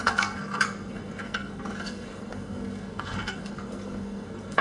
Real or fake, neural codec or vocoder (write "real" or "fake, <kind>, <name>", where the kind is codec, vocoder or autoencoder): fake, codec, SNAC